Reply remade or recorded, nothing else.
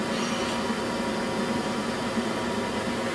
recorded